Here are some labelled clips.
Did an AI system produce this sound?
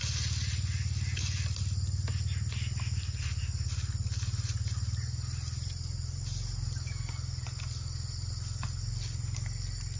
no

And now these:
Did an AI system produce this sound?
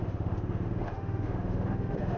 yes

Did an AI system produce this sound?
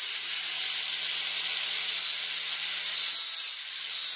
no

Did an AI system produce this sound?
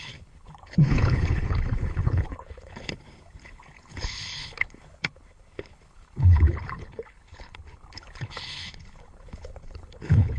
yes